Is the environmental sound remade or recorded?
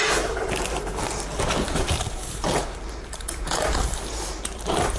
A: remade